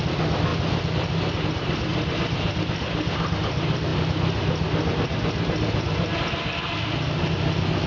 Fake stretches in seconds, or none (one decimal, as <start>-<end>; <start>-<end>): none